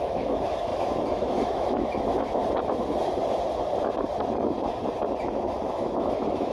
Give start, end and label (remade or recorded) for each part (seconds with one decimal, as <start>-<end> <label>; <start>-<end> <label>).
0.0-2.4 remade; 2.4-5.2 recorded; 5.2-6.5 remade